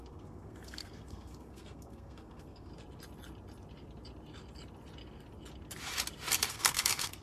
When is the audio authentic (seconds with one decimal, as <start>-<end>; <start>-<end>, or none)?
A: 2.7-6.5